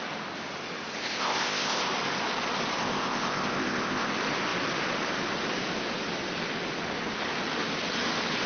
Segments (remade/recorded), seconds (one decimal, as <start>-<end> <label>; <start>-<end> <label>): 0.0-1.0 recorded; 1.0-1.9 remade; 1.9-2.8 recorded; 2.8-4.1 remade; 4.1-8.5 recorded